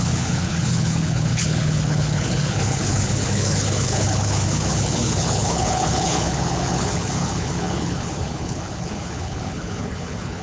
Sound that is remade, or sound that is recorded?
remade